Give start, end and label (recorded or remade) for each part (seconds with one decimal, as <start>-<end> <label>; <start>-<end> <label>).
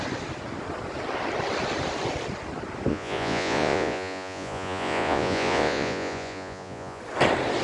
0.0-2.9 recorded; 2.9-7.0 remade; 7.0-7.6 recorded